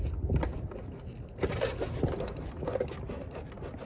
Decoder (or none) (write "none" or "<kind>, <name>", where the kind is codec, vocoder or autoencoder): none